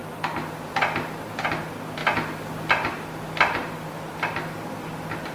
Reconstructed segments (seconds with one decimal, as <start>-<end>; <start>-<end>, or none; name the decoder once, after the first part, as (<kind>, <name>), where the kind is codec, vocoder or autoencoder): 0.0-2.0 (vocoder, BigVGAN v2); 2.7-5.3